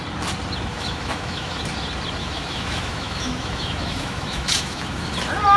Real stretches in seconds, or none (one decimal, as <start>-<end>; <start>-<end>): 0.0-0.7; 1.6-2.2; 5.1-5.6

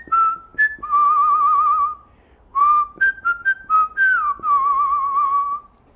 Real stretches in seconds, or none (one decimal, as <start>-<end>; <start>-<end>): 0.0-6.0

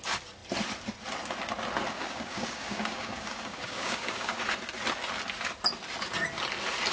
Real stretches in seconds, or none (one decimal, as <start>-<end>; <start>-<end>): 0.0-1.9; 4.3-6.9

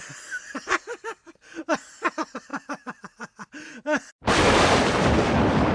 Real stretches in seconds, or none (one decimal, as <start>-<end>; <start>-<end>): 0.0-5.7

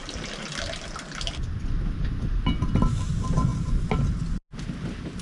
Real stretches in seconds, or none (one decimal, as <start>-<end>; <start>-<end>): 0.0-5.2

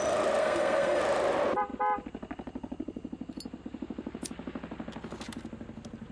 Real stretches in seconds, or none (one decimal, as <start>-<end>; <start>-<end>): 0.0-0.4; 1.0-6.1

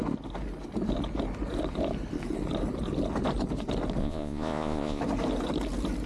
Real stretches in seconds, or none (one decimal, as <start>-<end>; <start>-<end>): 0.0-4.0; 5.0-6.1

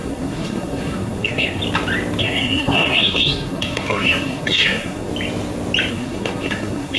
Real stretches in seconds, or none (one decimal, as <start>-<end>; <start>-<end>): 1.6-2.2; 5.1-5.9